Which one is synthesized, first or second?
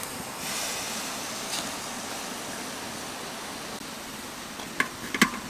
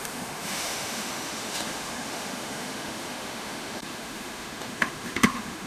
second